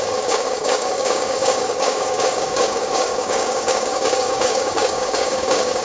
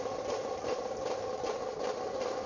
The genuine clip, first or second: second